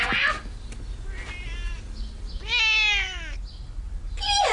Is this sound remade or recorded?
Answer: recorded